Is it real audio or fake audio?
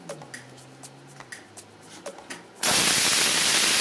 real